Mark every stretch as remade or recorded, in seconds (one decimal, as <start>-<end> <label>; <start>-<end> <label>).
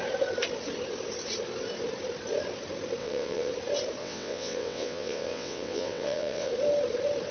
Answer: 0.0-3.0 recorded; 3.0-3.5 remade; 3.5-4.0 recorded; 4.0-6.5 remade; 6.5-7.3 recorded